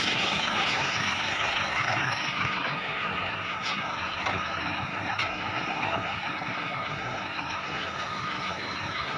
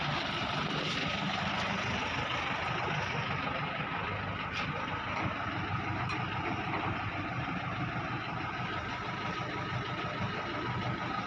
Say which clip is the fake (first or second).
first